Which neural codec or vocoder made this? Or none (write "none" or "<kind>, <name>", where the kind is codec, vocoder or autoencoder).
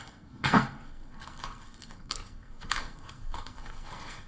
codec, SNAC